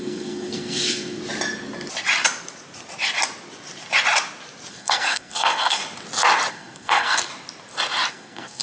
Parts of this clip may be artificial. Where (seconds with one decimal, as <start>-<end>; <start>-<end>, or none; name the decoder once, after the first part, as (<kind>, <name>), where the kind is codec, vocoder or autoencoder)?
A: 0.0-1.2 (codec, SNAC); 4.7-5.8; 6.5-7.3; 8.1-8.6